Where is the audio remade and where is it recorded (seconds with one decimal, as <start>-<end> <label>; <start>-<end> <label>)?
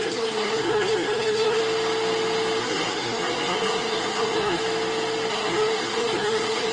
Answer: 0.0-1.6 remade; 1.6-2.6 recorded; 2.6-4.6 remade; 4.6-5.3 recorded; 5.3-6.7 remade